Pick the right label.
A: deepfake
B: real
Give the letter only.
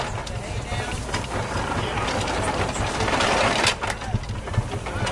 B